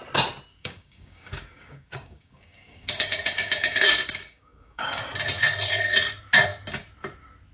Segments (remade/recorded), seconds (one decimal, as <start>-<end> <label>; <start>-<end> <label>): 0.0-0.5 recorded; 0.5-5.0 remade; 5.0-7.5 recorded